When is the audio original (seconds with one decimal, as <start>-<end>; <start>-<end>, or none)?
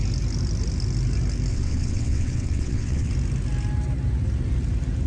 0.0-1.5; 3.1-5.1